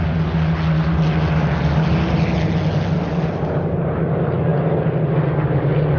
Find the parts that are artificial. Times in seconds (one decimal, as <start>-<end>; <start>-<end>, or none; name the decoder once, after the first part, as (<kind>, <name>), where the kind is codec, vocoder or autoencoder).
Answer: none